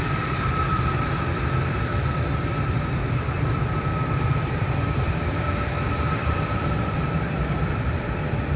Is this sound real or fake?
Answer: fake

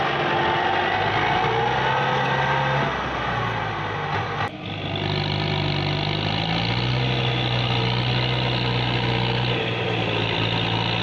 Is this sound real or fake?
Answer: real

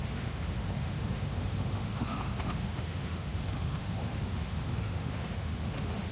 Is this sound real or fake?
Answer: fake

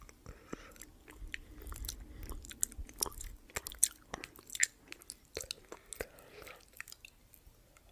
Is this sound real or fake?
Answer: real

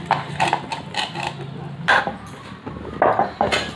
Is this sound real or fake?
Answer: real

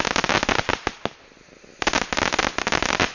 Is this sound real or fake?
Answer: real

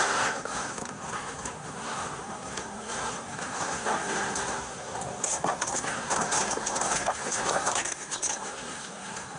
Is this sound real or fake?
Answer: fake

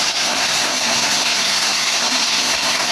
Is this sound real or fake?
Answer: fake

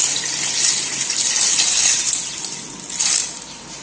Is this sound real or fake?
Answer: real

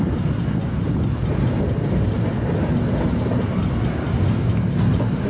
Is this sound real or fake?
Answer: real